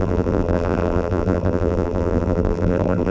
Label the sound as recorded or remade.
remade